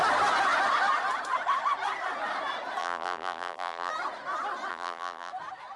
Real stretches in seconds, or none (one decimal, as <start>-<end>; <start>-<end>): 0.0-2.8; 3.9-4.7; 5.3-5.8